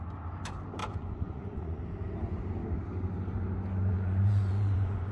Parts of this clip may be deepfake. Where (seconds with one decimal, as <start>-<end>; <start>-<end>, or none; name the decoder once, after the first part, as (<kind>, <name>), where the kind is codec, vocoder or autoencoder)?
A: 0.8-1.8 (vocoder, Vocos); 3.9-5.1